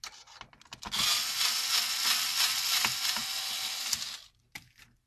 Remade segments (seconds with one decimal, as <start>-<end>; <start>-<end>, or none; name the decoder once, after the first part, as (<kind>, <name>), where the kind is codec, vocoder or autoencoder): none